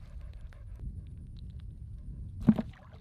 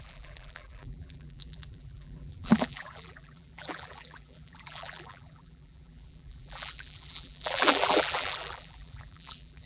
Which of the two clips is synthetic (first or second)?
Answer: second